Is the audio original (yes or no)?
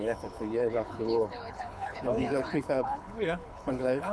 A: no